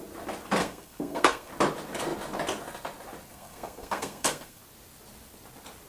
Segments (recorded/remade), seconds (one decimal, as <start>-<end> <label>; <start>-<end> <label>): 0.0-0.6 recorded; 0.6-1.5 remade; 1.5-3.3 recorded; 3.3-4.6 remade; 4.6-5.9 recorded